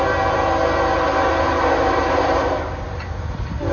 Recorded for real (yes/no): yes